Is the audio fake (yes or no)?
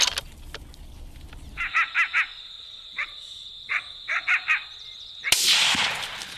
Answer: no